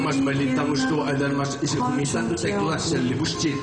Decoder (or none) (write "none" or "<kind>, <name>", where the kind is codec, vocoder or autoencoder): none